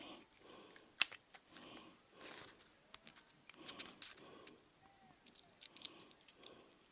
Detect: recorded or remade recorded